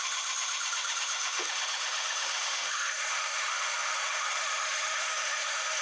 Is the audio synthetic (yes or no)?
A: yes